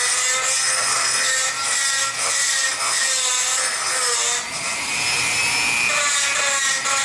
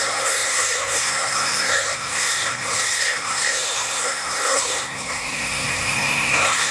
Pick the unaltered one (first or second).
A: first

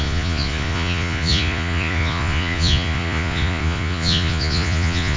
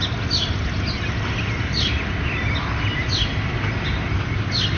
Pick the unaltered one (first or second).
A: second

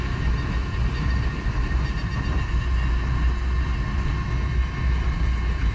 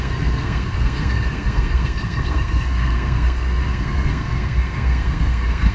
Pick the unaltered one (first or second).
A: first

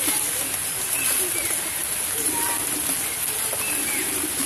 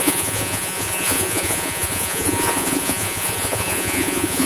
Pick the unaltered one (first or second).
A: first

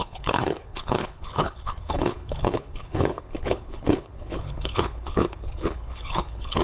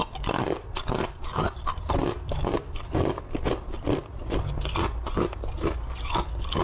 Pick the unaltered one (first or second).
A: second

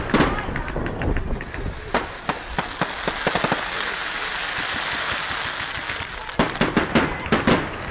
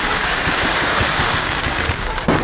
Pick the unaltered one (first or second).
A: first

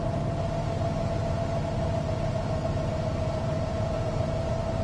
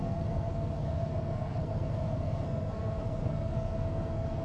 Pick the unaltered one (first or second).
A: first